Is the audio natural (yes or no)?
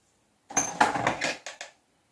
yes